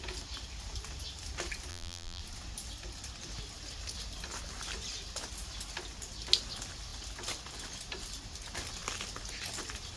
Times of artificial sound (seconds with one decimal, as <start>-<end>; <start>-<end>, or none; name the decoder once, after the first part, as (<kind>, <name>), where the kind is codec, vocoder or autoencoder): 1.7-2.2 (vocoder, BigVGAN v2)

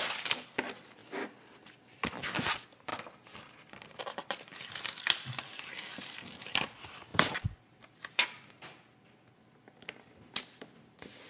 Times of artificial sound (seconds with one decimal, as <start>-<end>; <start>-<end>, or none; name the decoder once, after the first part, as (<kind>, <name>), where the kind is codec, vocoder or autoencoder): 2.9-6.2 (vocoder, BigVGAN v2); 7.1-8.1

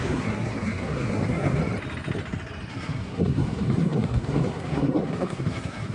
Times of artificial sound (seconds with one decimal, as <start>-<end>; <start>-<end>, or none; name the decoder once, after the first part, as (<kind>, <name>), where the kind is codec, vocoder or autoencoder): 0.0-1.6 (codec, SNAC); 2.7-5.9

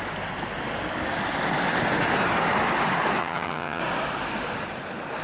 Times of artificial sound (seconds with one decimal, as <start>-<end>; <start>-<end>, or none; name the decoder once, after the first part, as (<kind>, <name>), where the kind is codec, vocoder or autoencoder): 3.2-3.8 (vocoder, HiFi-GAN)